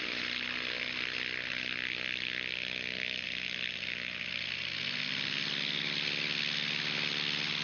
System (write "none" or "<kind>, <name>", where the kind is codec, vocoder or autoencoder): none